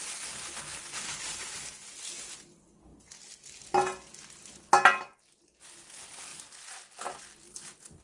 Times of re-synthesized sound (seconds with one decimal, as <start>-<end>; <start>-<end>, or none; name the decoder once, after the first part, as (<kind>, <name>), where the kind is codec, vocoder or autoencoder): none